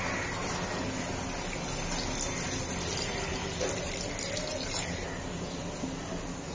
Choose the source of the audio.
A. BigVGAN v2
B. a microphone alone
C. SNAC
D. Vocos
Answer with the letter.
B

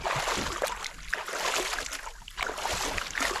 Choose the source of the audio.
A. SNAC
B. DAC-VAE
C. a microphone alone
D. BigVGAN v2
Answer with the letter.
C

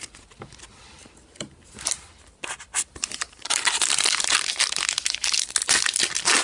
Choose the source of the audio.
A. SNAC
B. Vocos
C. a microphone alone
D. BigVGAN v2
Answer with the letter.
C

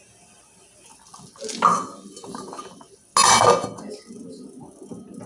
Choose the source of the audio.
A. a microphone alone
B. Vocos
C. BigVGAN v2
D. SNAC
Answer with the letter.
A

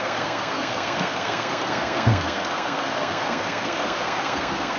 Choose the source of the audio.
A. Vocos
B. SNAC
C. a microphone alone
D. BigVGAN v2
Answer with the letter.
B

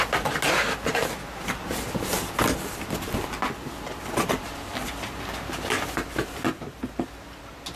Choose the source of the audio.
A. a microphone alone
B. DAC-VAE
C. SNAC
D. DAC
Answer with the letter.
A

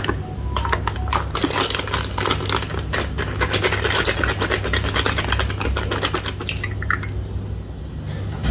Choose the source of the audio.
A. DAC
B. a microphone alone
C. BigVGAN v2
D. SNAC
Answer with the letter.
B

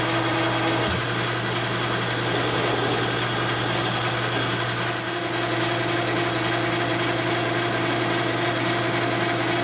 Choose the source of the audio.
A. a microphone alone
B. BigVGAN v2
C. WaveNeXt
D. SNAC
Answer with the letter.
A